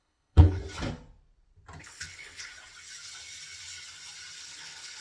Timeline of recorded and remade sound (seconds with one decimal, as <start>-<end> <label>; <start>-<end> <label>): 0.0-0.6 remade; 0.6-1.8 recorded; 1.8-2.5 remade; 2.5-4.4 recorded; 4.4-5.0 remade